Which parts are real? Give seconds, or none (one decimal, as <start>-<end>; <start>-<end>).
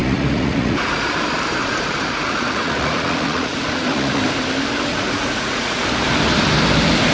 1.1-1.6; 4.2-4.9; 5.8-7.1